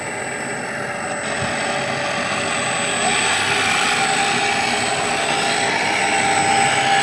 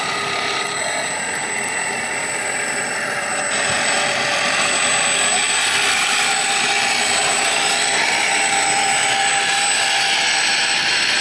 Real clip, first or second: first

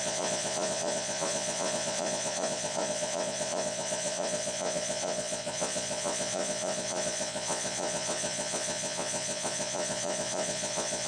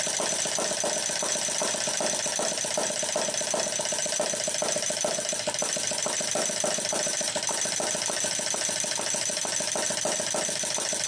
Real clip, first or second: second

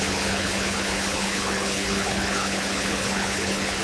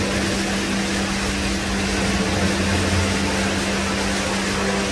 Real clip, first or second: second